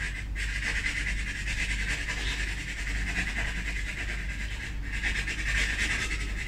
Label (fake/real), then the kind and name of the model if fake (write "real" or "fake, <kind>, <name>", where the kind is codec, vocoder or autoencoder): real